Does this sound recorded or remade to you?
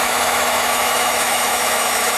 remade